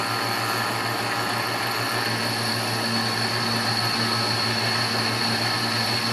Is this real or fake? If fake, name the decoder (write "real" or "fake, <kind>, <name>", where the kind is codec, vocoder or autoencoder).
real